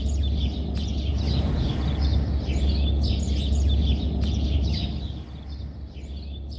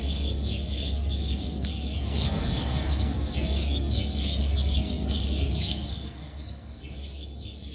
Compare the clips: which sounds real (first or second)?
first